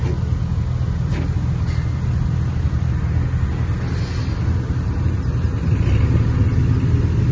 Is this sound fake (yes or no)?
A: no